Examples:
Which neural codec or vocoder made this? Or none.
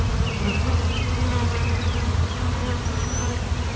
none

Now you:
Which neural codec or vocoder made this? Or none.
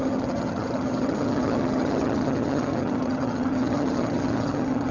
vocoder, HiFi-GAN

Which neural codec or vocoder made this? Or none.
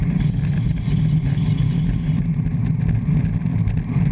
none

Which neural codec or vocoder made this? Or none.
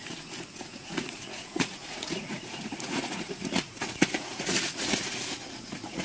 vocoder, Vocos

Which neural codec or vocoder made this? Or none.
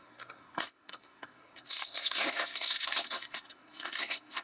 codec, SNAC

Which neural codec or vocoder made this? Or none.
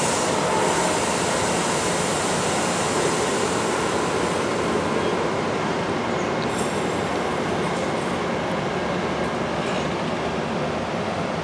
none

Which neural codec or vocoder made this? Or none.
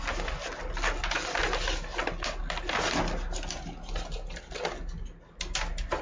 none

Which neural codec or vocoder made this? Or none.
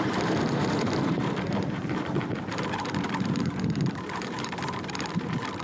vocoder, BigVGAN v2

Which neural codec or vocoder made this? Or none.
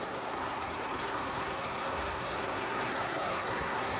codec, SNAC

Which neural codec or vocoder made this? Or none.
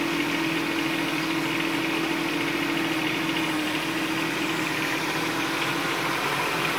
none